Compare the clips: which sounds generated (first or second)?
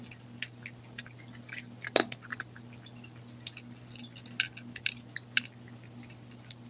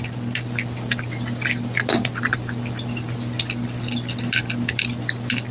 first